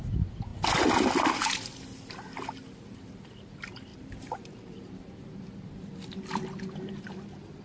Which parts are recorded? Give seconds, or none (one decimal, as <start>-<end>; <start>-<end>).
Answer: 0.0-3.9; 5.4-7.6